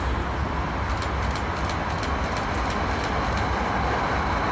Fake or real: real